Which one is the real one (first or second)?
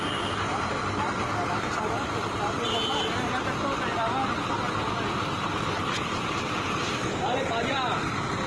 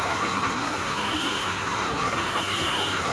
first